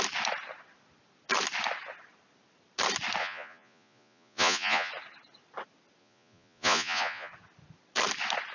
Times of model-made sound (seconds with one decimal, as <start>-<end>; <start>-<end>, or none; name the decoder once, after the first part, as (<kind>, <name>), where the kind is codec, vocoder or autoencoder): 3.2-4.9 (vocoder, Vocos); 6.0-7.3